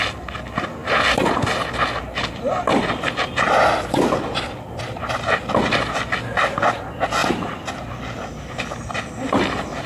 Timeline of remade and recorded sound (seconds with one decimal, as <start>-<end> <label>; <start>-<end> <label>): 0.0-2.7 recorded; 2.7-4.8 remade; 4.8-9.9 recorded